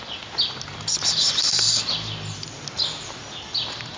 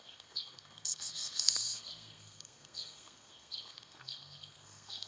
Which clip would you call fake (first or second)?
second